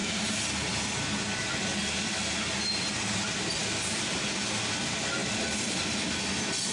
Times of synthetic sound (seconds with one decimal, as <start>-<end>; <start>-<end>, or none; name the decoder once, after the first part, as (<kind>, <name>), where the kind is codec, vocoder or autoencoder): 0.0-1.2 (vocoder, BigVGAN v2); 3.6-4.5; 5.2-5.8

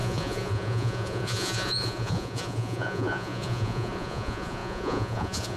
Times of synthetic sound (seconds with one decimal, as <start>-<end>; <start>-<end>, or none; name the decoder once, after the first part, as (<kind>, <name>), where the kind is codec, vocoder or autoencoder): 0.0-5.6 (vocoder, Vocos)

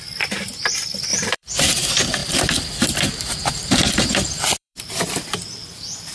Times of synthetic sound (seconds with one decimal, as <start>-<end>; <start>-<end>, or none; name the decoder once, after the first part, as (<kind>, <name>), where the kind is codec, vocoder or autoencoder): 1.1-1.6 (vocoder, BigVGAN v2); 2.2-6.1

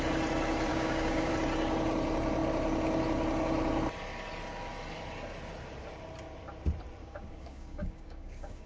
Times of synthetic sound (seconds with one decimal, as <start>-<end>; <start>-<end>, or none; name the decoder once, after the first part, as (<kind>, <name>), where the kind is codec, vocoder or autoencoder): 0.7-1.3 (codec, DAC); 7.0-8.7